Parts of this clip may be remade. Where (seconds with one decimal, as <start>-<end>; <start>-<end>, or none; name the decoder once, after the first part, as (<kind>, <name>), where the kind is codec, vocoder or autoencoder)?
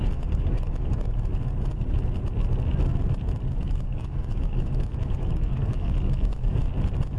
0.0-1.3 (codec, DAC); 3.7-6.6